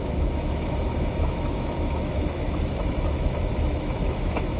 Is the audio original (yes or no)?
no